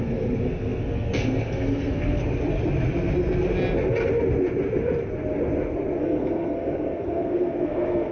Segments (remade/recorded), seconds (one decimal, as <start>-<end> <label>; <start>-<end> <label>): 0.0-2.2 remade; 2.2-6.0 recorded; 6.0-8.1 remade